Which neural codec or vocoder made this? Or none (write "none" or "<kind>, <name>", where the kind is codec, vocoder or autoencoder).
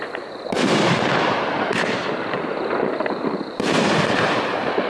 vocoder, BigVGAN v2